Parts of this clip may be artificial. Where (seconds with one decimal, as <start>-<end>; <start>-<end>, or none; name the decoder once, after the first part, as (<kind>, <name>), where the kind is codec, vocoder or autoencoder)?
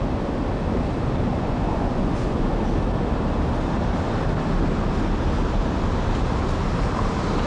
1.3-2.6 (vocoder, Vocos)